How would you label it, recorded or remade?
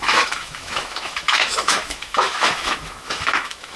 remade